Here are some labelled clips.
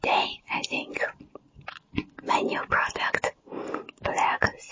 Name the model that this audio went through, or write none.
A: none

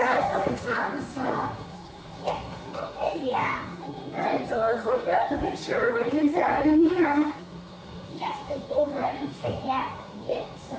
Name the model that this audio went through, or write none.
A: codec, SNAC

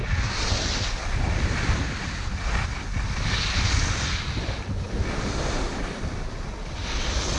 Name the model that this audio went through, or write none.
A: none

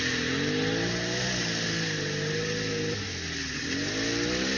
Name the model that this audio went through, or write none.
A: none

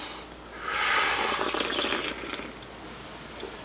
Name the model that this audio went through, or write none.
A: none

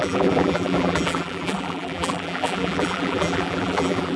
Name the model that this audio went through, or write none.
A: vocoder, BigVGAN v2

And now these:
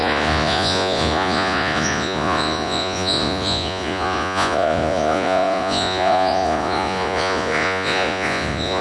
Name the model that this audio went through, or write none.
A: vocoder, Vocos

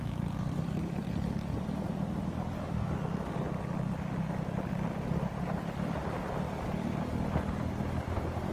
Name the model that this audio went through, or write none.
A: vocoder, BigVGAN v2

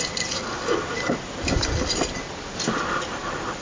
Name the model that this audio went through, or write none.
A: none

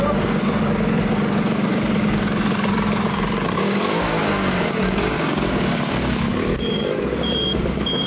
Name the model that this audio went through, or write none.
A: codec, DAC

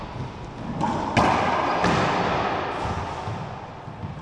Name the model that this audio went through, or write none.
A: none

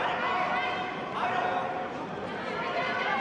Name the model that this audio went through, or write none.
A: none